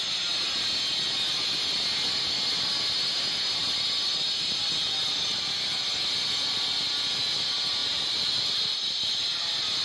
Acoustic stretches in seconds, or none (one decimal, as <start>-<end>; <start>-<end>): 0.0-7.8; 9.1-9.8

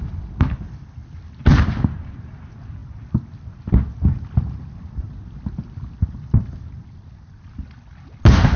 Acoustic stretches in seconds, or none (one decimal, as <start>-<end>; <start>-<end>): 0.0-8.6

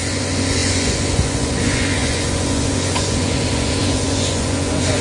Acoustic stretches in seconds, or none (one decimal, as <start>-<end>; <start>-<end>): none

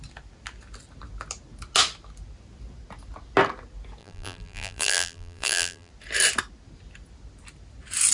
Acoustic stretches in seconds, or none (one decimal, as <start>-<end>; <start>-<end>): 0.0-4.0; 5.9-8.1

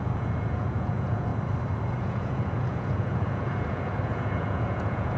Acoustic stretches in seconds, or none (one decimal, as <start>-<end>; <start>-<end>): 1.3-2.0

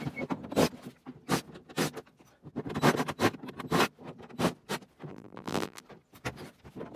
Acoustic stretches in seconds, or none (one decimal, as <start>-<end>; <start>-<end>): 0.0-5.1; 5.8-7.0

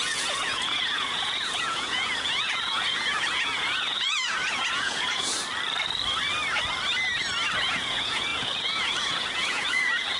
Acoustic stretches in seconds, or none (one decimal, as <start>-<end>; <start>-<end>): 5.3-7.6